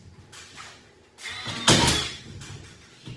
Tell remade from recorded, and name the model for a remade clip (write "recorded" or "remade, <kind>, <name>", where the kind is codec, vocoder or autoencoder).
recorded